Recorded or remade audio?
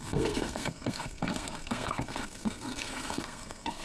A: remade